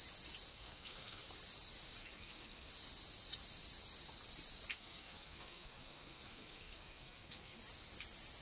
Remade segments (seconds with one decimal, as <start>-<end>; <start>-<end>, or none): 0.5-1.2; 2.0-2.7; 4.7-7.6